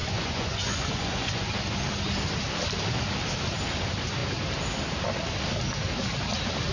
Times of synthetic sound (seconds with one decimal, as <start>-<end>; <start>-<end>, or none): 0.0-1.5